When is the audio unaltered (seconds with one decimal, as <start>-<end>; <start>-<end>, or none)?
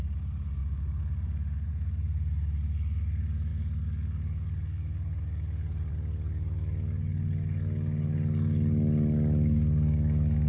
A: 0.0-10.5